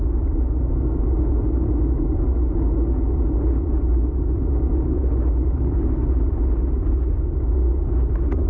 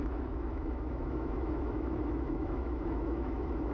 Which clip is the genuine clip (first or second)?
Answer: first